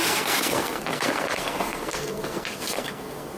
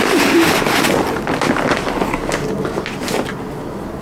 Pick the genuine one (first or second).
second